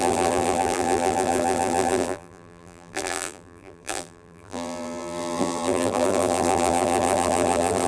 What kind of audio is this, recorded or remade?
remade